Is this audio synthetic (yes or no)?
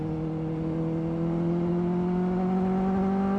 no